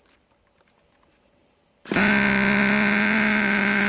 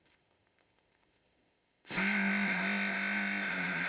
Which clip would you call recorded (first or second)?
first